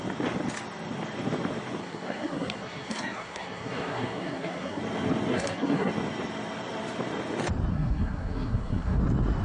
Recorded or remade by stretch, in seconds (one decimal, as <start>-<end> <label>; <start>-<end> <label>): 0.0-1.8 recorded; 1.8-4.8 remade; 4.8-5.3 recorded; 5.3-5.9 remade; 5.9-7.7 recorded; 7.7-9.0 remade; 9.0-9.4 recorded